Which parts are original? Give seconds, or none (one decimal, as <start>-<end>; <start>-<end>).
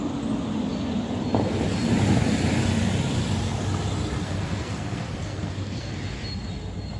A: 0.0-4.2; 5.9-7.0